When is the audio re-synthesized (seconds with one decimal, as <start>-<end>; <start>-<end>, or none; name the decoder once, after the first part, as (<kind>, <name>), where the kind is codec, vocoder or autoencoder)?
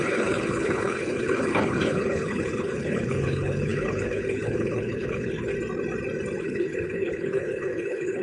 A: 0.0-5.5 (codec, HILCodec); 6.4-8.2